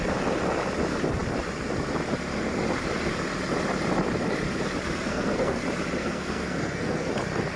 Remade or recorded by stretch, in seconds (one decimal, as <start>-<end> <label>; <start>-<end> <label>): 0.0-5.1 recorded; 5.1-5.6 remade; 5.6-6.0 recorded; 6.0-7.1 remade; 7.1-7.6 recorded